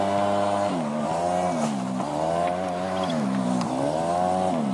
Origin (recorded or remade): recorded